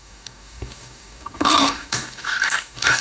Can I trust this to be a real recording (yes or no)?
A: no